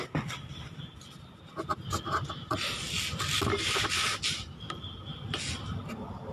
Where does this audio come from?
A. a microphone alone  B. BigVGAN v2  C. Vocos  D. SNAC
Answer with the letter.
A